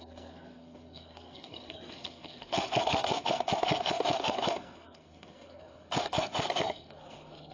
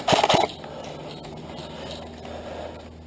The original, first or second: second